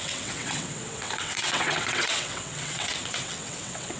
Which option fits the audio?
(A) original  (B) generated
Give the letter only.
B